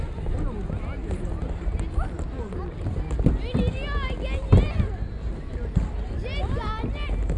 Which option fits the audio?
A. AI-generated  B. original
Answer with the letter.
B